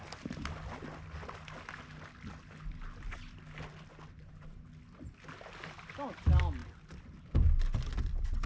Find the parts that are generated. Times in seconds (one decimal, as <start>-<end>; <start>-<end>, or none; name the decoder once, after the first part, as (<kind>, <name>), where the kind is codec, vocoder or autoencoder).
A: none